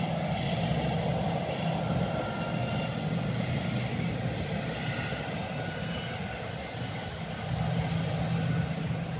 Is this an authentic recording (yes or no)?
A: yes